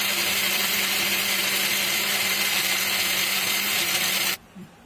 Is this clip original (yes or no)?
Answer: no